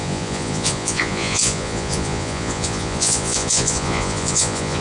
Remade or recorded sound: remade